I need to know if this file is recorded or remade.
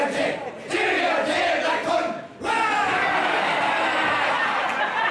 recorded